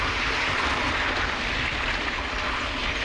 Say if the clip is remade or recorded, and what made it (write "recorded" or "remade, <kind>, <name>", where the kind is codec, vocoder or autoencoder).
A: recorded